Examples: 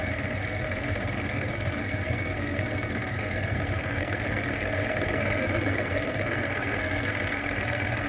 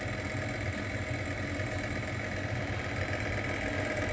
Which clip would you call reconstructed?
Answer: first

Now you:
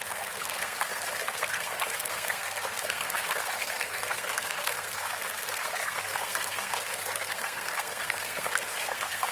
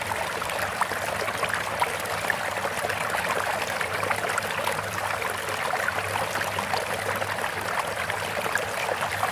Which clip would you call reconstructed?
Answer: first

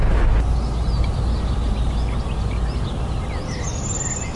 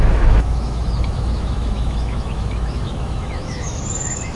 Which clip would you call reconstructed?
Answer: second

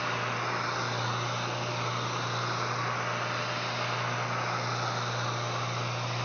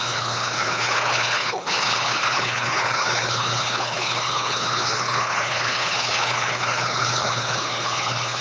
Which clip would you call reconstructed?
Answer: second